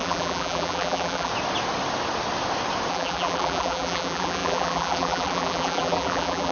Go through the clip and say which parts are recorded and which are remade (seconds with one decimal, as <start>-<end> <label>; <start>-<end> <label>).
0.0-1.3 remade; 1.3-2.9 recorded; 2.9-6.5 remade